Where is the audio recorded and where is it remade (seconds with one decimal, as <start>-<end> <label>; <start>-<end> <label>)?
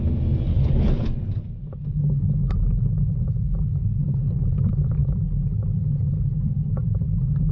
0.0-0.5 recorded; 0.5-1.4 remade; 1.4-3.8 recorded; 3.8-4.4 remade; 4.4-7.5 recorded